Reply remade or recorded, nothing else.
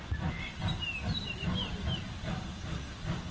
recorded